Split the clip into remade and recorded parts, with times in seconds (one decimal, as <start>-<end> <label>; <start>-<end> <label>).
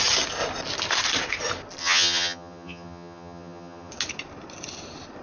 0.0-1.8 recorded; 1.8-3.9 remade; 3.9-5.2 recorded